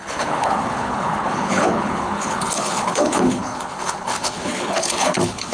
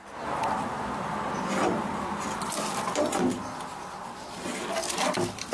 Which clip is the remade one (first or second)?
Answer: first